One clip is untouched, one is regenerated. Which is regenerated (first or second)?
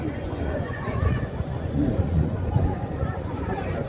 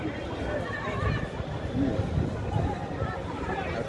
first